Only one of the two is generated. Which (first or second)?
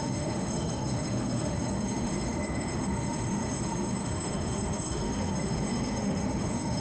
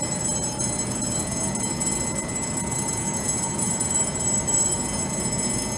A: first